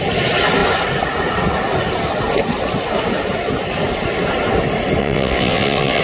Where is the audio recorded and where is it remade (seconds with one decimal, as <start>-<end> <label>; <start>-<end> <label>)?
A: 0.0-5.0 recorded; 5.0-6.0 remade